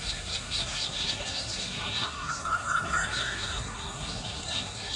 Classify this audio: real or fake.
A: fake